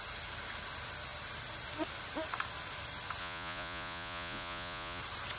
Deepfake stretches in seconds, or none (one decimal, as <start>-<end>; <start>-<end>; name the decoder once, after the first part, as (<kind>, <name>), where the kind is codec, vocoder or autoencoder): 3.2-5.0 (vocoder, Vocos)